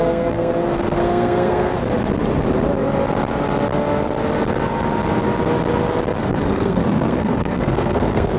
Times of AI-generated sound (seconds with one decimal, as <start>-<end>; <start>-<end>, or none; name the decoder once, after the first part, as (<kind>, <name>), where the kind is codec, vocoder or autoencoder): 0.0-1.7 (codec, SNAC); 6.2-8.4